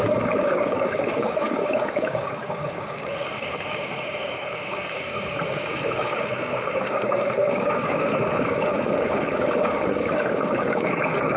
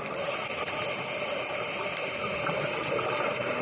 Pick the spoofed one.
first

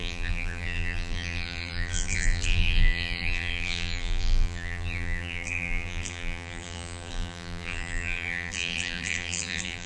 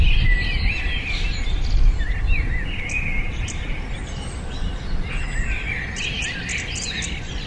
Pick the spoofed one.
first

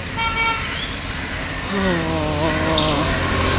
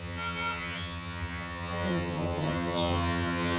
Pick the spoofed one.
second